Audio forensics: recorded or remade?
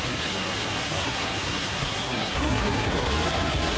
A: remade